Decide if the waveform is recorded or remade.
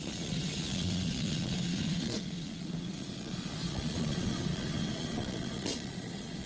remade